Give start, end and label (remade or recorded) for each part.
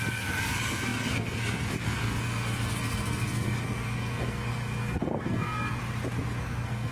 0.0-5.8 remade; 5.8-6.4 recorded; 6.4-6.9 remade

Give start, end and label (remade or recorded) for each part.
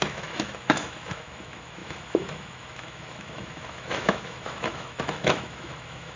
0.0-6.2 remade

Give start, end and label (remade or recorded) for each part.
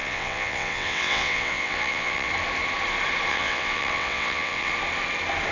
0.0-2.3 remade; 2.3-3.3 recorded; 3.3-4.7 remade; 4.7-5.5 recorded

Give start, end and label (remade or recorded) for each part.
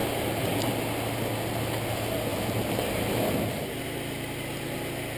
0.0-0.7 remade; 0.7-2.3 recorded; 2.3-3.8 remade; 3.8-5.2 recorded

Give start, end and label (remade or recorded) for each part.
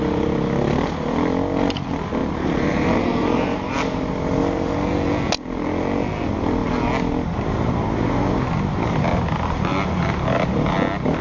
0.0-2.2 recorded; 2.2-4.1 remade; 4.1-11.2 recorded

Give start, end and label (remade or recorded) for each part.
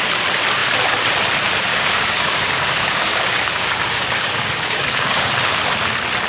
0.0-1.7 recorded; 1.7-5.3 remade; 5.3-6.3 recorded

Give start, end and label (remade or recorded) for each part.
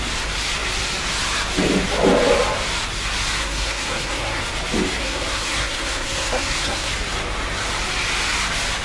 0.0-3.4 recorded; 3.4-4.4 remade; 4.4-5.0 recorded; 5.0-6.9 remade; 6.9-8.8 recorded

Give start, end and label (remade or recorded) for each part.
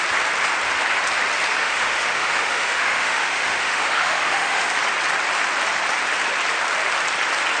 0.0-1.6 recorded; 1.6-4.7 remade; 4.7-7.6 recorded